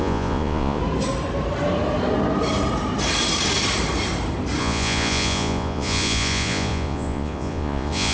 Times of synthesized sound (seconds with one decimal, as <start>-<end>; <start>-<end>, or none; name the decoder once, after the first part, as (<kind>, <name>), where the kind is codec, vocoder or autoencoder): 0.0-0.8 (vocoder, Vocos); 4.6-8.1